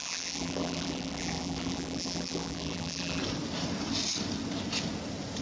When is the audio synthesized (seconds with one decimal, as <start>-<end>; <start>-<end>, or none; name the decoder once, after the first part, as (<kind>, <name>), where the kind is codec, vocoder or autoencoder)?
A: 0.0-3.2 (vocoder, BigVGAN v2)